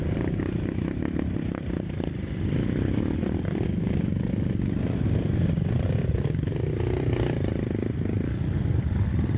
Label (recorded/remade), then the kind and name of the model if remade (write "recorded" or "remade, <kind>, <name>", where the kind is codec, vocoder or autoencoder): remade, vocoder, BigVGAN v2